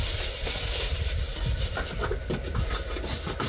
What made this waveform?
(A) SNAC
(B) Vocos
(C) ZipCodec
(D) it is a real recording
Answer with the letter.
D